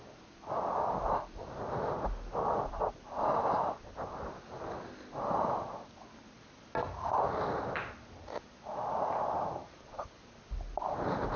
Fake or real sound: real